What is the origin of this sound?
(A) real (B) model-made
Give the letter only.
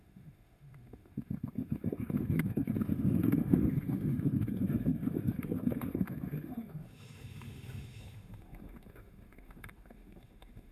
B